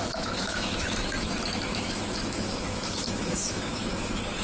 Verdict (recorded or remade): remade